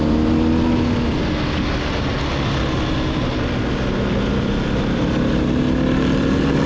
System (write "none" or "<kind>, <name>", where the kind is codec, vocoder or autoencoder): none